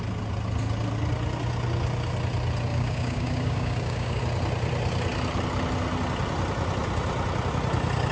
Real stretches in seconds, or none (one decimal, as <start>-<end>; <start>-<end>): 0.0-2.7; 4.2-8.1